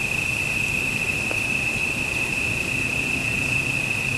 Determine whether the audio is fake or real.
real